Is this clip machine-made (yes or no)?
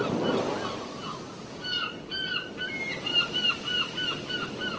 no